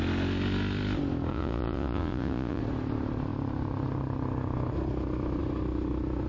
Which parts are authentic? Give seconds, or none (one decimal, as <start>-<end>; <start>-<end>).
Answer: 0.0-1.3; 2.6-6.3